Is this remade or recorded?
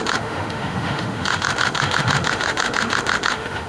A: remade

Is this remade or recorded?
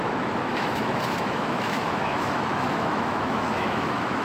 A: remade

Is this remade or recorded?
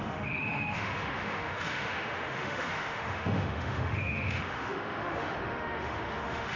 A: remade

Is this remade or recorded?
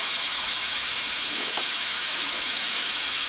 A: remade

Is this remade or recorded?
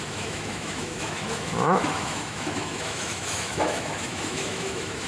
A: remade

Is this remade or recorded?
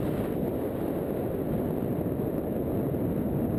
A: recorded